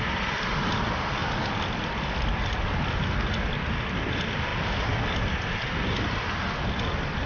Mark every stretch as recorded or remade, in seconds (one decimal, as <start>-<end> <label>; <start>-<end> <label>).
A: 0.0-7.3 recorded